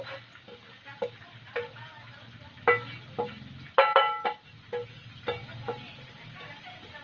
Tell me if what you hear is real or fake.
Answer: real